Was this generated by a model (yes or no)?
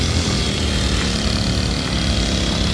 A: no